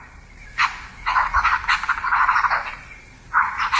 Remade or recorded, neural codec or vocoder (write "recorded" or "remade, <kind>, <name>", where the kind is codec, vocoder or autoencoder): recorded